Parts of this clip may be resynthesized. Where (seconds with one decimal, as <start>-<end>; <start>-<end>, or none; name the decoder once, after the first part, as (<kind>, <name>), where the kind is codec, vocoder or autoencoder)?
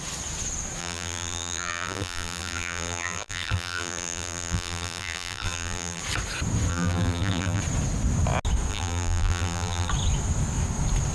0.8-6.0 (vocoder, BigVGAN v2); 6.7-7.6; 8.7-9.9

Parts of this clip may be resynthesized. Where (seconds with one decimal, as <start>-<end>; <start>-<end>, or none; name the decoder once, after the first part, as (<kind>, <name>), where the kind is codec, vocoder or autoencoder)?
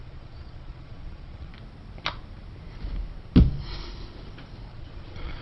0.0-1.5 (vocoder, Vocos); 4.7-5.4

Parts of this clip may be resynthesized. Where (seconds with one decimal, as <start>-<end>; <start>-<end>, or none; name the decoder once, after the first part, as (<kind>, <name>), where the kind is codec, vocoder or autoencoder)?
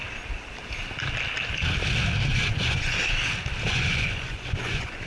2.3-3.0 (vocoder, Vocos); 3.7-5.1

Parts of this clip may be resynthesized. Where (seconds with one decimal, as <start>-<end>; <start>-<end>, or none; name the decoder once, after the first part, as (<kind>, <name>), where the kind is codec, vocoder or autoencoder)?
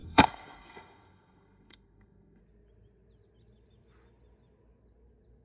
0.0-2.4 (codec, SNAC)